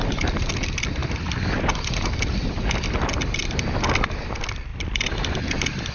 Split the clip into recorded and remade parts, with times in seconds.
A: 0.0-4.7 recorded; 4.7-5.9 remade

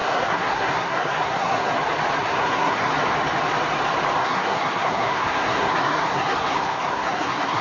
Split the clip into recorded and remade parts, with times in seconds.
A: 0.0-1.7 remade; 1.7-2.2 recorded; 2.2-2.9 remade; 2.9-4.2 recorded; 4.2-7.6 remade

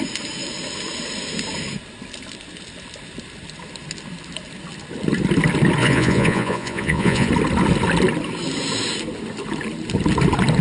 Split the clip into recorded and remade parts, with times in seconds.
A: 0.0-5.8 recorded; 5.8-7.3 remade; 7.3-10.6 recorded

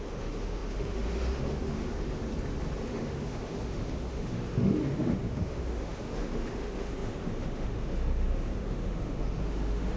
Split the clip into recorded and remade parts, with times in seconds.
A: 0.0-2.3 remade; 2.3-2.9 recorded; 2.9-10.0 remade

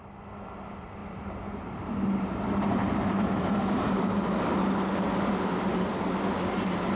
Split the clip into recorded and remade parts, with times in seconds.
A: 0.0-1.0 recorded; 1.0-4.0 remade; 4.0-7.0 recorded